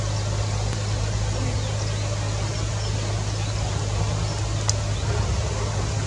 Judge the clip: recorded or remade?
recorded